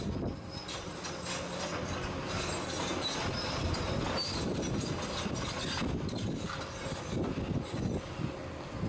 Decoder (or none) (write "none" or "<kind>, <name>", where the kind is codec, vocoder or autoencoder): none